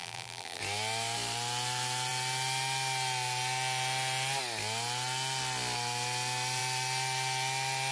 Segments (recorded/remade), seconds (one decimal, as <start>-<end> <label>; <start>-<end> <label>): 0.0-0.6 remade; 0.6-7.9 recorded